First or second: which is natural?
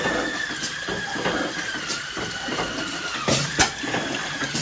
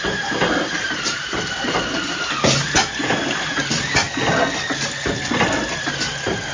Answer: second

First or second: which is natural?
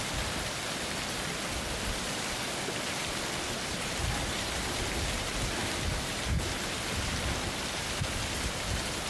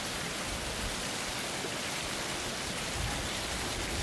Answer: second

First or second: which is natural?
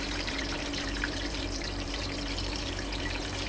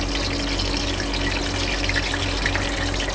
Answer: second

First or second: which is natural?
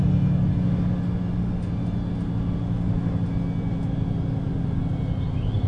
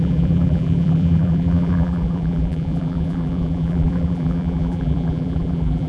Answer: first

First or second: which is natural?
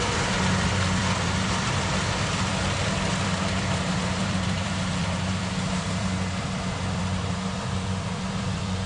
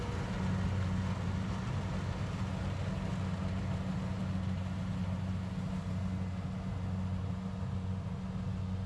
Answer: second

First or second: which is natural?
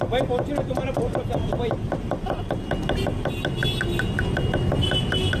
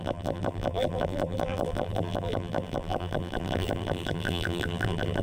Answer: first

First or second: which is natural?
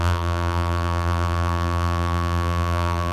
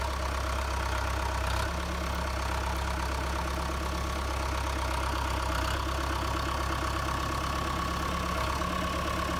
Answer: second